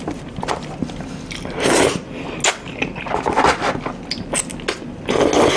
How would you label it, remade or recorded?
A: recorded